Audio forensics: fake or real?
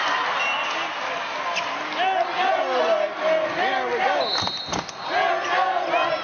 real